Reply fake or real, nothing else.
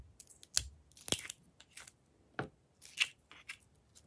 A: real